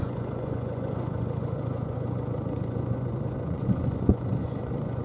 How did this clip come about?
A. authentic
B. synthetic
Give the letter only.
B